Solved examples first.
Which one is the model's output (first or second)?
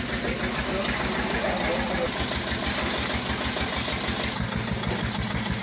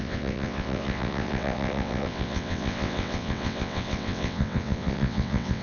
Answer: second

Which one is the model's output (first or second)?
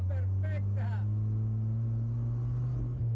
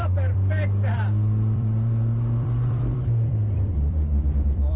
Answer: second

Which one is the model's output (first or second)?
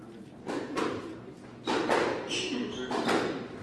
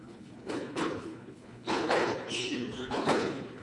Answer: second